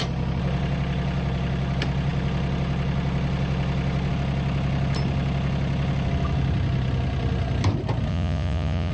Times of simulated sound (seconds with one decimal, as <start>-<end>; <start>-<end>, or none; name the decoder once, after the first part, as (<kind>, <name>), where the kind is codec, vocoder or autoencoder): 8.1-8.9 (vocoder, Vocos)

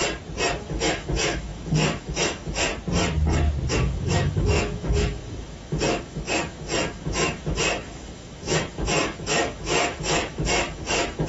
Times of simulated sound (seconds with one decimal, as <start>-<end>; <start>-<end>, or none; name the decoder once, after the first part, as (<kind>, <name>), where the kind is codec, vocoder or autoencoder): 0.6-2.7 (autoencoder, DAC-VAE); 3.7-11.3

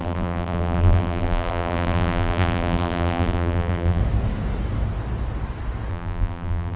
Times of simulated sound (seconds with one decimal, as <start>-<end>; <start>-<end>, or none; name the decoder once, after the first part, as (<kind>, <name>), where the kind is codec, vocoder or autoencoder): 0.0-4.0 (vocoder, BigVGAN v2); 5.9-6.8

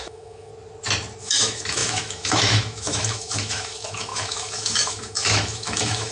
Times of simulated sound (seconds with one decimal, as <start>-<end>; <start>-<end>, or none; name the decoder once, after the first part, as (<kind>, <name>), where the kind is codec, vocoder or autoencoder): 0.0-0.5 (autoencoder, DAC-VAE); 1.2-6.1

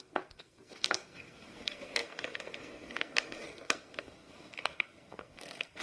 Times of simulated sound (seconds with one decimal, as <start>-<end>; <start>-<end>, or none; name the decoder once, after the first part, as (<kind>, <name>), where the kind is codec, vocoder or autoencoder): 0.0-5.8 (codec, SNAC)

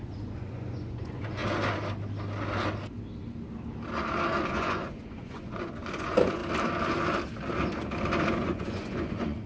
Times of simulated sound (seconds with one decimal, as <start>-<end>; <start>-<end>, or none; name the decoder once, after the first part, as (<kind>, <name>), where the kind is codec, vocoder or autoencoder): 0.0-1.4 (vocoder, Vocos); 4.5-6.4; 8.3-9.5